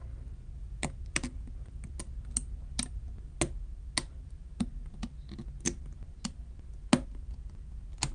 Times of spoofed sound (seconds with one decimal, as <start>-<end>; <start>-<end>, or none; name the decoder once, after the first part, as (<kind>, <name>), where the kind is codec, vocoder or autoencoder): none